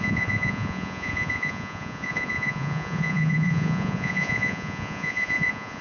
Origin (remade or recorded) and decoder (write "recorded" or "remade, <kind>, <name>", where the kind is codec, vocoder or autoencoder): remade, vocoder, Vocos